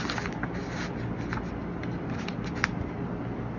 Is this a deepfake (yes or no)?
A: no